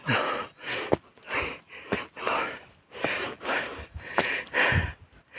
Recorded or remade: recorded